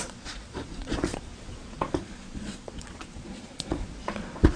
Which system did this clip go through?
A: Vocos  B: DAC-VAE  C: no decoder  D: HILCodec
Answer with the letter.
A